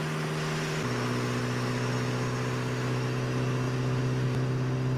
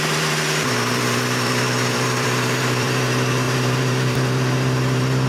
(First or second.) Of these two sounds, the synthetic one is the second